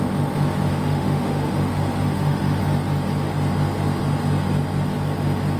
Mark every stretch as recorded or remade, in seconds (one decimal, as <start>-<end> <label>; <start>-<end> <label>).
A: 0.0-0.7 recorded; 0.7-2.6 remade; 2.6-5.6 recorded